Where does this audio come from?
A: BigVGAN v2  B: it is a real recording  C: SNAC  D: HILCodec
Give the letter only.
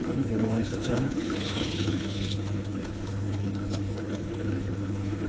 D